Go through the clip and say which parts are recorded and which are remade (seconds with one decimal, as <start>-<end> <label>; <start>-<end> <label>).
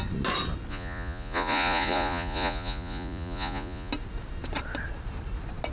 0.0-0.7 recorded; 0.7-3.9 remade; 3.9-5.7 recorded